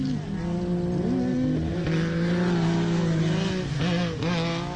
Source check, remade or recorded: recorded